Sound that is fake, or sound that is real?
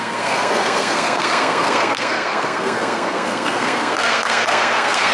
fake